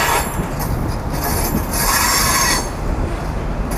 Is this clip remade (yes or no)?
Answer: no